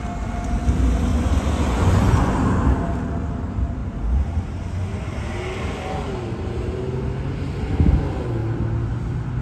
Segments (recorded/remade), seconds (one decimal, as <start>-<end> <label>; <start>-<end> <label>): 0.0-1.1 recorded; 1.1-2.3 remade; 2.3-9.4 recorded